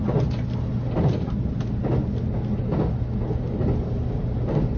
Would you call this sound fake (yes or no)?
no